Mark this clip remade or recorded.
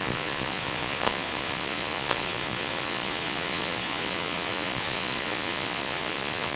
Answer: remade